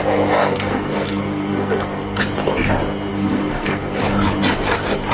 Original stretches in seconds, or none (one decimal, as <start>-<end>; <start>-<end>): 0.0-0.4; 2.2-3.1; 4.0-5.1